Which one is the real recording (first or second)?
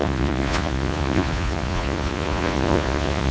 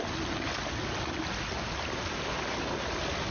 second